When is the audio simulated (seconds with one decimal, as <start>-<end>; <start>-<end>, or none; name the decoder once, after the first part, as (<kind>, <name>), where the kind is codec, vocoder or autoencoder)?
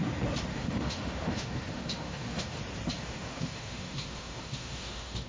0.5-2.6 (autoencoder, DAC-VAE); 3.0-5.3